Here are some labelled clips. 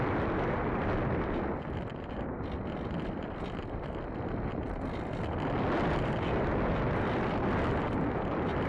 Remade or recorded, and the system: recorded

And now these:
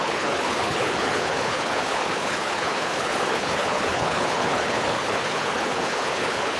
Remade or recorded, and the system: remade, codec, HILCodec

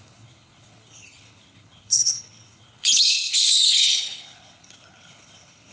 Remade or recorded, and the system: remade, codec, HILCodec